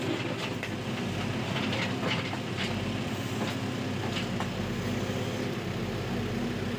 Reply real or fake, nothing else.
real